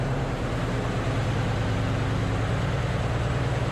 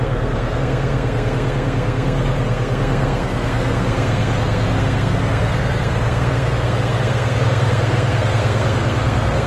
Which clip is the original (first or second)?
first